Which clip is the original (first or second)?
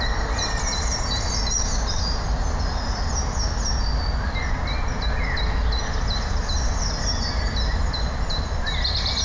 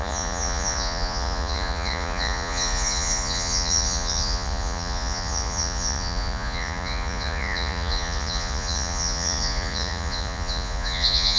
first